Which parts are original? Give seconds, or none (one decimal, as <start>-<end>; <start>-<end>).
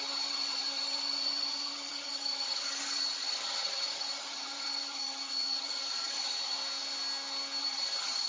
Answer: 6.6-7.6